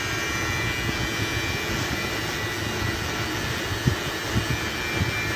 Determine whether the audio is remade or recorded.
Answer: recorded